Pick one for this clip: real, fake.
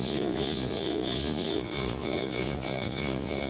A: fake